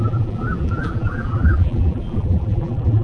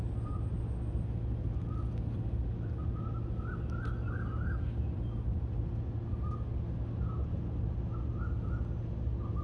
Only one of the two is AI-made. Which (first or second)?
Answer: first